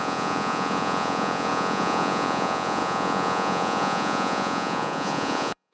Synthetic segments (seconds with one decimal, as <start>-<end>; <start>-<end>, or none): 0.0-5.7